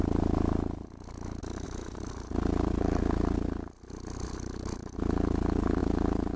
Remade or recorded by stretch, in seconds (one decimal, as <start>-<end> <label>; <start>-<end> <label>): 0.0-6.4 recorded